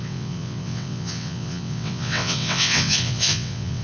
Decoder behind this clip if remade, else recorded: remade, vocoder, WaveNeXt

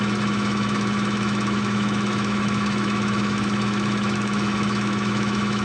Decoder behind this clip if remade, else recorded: remade, autoencoder, DAC-VAE